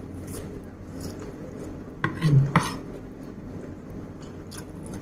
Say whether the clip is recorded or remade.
recorded